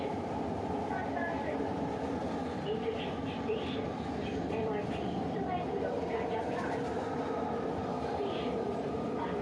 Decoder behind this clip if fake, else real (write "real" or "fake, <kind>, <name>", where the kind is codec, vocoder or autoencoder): real